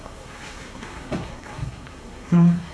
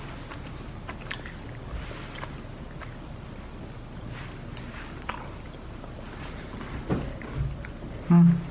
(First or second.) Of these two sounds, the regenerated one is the first